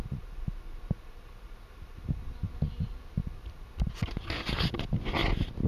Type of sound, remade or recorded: recorded